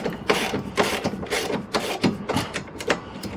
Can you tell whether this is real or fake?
fake